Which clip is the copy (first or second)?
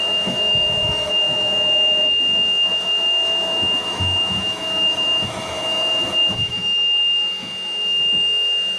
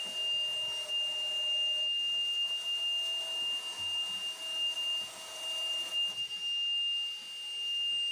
first